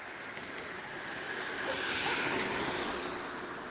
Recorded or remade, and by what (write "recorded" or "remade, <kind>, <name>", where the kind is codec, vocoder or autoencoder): recorded